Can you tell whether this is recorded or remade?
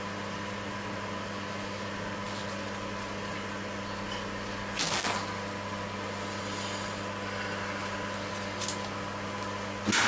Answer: recorded